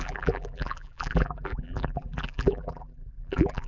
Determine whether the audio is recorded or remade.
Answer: remade